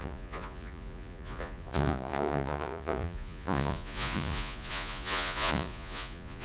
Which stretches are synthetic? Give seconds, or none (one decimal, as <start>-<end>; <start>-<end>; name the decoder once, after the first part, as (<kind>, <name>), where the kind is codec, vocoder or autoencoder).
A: 0.0-6.4 (vocoder, Vocos)